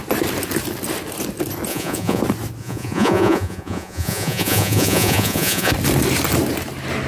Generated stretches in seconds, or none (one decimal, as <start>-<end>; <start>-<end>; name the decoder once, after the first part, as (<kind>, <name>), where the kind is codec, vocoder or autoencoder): 1.7-2.2 (vocoder, Vocos); 2.6-5.7